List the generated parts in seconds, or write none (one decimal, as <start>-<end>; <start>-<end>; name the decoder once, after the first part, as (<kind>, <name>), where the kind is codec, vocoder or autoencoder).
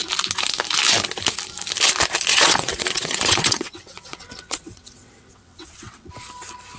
2.3-6.1 (vocoder, WaveNeXt)